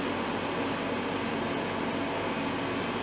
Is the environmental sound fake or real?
real